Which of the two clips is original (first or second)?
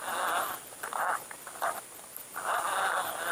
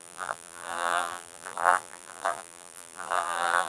first